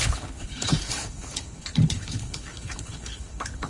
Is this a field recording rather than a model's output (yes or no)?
no